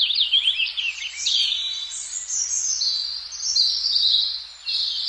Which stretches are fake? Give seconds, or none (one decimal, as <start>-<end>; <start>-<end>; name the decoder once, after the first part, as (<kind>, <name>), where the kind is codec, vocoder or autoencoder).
none